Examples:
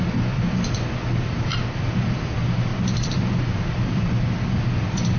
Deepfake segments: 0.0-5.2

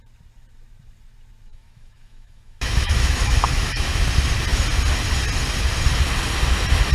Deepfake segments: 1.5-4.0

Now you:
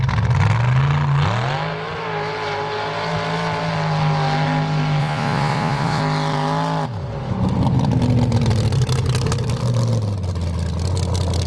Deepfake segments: 5.0-6.0